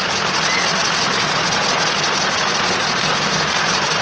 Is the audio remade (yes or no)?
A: no